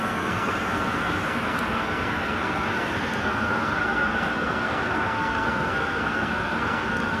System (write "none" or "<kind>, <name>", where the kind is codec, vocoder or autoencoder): codec, SNAC